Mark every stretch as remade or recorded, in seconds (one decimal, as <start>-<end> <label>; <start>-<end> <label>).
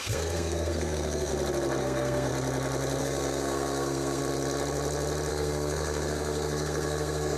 0.0-1.3 remade; 1.3-1.8 recorded; 1.8-2.3 remade; 2.3-3.0 recorded; 3.0-4.2 remade; 4.2-5.3 recorded; 5.3-7.4 remade